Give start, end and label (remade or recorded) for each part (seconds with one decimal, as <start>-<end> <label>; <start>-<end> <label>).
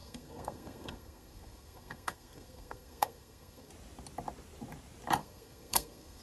0.0-3.7 remade; 3.7-5.2 recorded; 5.2-6.2 remade